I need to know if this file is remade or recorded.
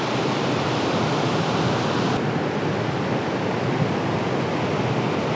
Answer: recorded